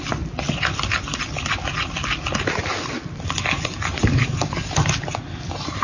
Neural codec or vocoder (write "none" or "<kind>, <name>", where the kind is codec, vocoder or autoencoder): none